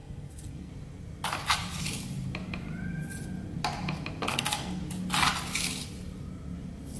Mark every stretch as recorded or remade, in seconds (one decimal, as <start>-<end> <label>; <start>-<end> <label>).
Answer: 0.0-0.7 remade; 0.7-4.3 recorded; 4.3-4.8 remade; 4.8-7.0 recorded